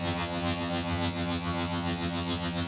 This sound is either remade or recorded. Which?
remade